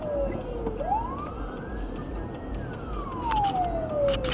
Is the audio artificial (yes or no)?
no